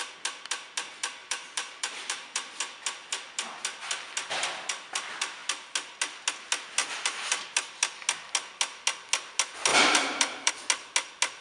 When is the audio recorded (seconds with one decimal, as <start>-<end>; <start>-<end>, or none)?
0.0-1.2; 2.6-6.8; 7.4-9.7; 10.5-11.4